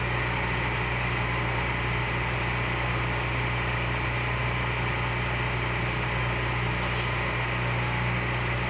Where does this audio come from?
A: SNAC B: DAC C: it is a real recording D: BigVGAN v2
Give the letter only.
C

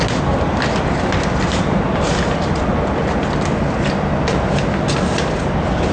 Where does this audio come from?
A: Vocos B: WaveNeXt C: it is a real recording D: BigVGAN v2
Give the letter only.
C